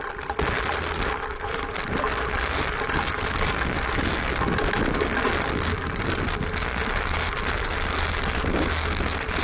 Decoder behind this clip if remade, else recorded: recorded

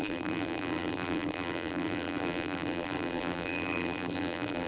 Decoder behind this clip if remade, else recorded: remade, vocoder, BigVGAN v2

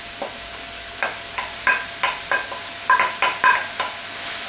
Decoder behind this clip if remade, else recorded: recorded